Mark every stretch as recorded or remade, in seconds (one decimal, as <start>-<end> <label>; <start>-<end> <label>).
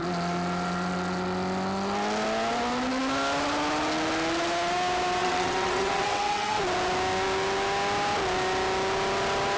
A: 0.0-5.2 recorded; 5.2-6.6 remade; 6.6-9.6 recorded